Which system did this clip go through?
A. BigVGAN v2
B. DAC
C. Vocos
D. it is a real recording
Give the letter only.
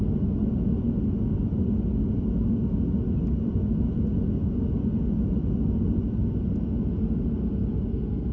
D